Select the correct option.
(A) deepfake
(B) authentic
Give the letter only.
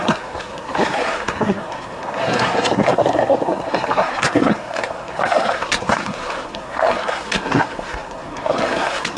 A